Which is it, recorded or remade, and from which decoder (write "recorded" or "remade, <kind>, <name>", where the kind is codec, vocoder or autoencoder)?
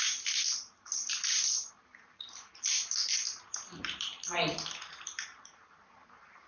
remade, vocoder, BigVGAN v2